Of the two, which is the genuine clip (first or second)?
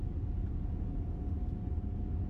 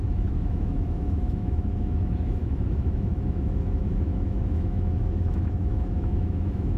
first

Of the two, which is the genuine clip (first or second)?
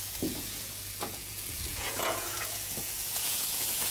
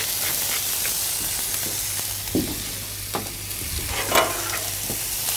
second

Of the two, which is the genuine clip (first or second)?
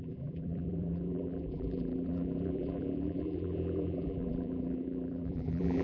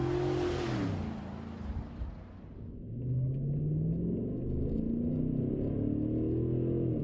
second